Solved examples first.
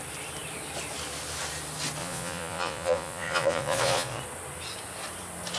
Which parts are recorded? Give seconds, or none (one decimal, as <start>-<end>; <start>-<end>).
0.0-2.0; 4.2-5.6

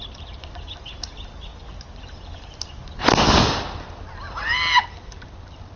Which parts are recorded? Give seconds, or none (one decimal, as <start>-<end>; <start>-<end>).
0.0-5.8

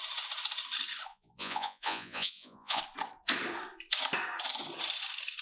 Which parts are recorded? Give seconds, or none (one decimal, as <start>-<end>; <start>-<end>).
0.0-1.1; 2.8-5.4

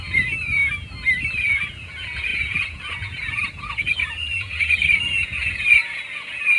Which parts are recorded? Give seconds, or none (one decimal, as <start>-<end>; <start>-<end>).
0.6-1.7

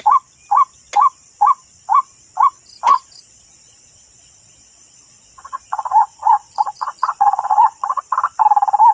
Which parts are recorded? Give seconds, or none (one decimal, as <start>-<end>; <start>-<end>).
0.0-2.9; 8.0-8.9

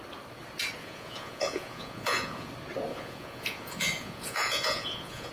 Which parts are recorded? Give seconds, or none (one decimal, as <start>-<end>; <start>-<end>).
0.0-0.8; 2.5-2.9

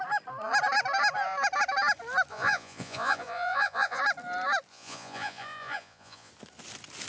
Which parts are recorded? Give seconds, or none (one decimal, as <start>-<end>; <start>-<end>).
0.0-2.3; 4.0-4.7; 6.3-7.1